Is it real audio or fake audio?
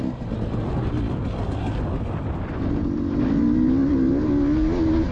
real